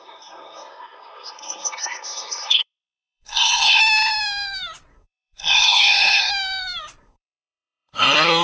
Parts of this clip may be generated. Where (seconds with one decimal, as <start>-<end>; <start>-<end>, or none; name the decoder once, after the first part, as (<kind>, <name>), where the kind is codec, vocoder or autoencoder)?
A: 0.0-3.8 (codec, SNAC); 4.9-6.3; 7.0-8.4